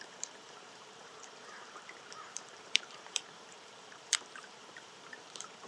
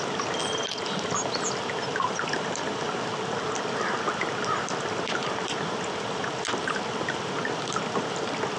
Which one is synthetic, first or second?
first